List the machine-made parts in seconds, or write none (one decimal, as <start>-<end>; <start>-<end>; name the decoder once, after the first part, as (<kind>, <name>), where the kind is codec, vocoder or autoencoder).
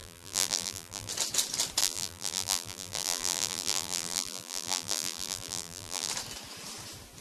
0.0-1.1 (vocoder, BigVGAN v2); 1.8-6.1